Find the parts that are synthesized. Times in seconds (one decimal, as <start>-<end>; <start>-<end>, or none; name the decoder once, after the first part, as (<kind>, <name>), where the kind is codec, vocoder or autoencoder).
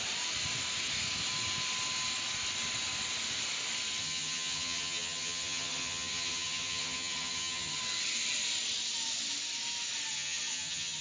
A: 4.0-7.8 (vocoder, HiFi-GAN); 10.1-11.0